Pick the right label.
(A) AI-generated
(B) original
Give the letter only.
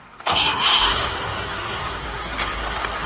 A